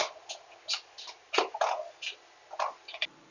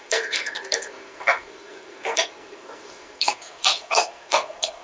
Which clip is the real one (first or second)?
first